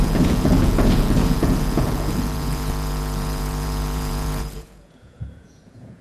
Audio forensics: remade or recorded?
remade